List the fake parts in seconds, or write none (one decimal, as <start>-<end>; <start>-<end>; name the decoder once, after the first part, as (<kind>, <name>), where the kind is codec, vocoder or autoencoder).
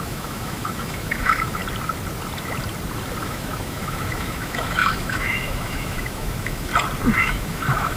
0.0-1.6 (autoencoder, DAC-VAE); 3.2-6.7; 7.2-8.0